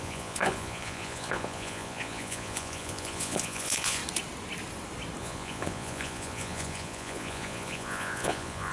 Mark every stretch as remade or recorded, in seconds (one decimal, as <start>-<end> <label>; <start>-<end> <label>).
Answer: 0.0-4.0 remade; 4.0-5.2 recorded; 5.2-8.7 remade